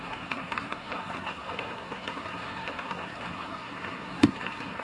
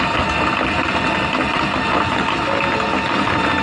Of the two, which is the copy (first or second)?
first